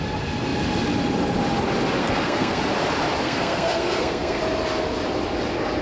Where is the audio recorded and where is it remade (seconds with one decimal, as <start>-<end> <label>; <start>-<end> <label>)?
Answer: 0.0-2.0 recorded; 2.0-2.6 remade; 2.6-3.2 recorded; 3.2-4.4 remade; 4.4-5.8 recorded

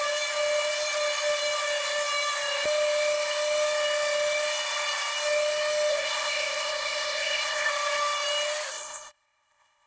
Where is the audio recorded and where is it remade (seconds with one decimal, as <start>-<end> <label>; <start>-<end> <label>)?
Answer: 0.0-5.9 recorded; 5.9-7.7 remade; 7.7-8.7 recorded; 8.7-9.9 remade

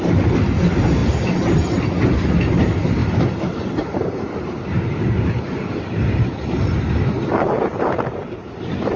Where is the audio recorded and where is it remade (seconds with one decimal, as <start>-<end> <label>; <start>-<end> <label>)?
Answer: 0.0-3.0 recorded; 3.0-6.6 remade; 6.6-9.0 recorded

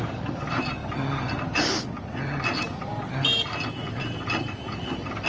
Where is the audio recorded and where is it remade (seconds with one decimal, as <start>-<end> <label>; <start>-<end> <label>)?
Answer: 0.0-5.3 recorded

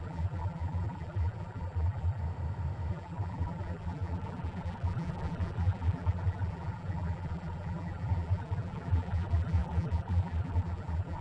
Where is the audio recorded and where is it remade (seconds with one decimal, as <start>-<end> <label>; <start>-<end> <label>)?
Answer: 0.0-2.2 remade; 2.2-2.9 recorded; 2.9-11.2 remade

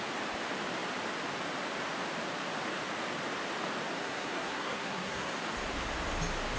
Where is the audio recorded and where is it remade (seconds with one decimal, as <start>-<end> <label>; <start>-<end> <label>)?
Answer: 0.0-4.0 recorded; 4.0-5.3 remade; 5.3-6.6 recorded

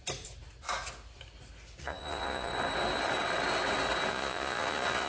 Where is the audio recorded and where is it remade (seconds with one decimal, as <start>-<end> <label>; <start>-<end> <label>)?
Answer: 0.0-1.8 recorded; 1.8-2.5 remade; 2.5-4.1 recorded; 4.1-5.1 remade